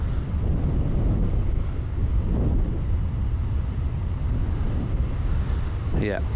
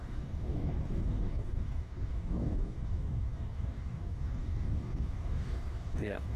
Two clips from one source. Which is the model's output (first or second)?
second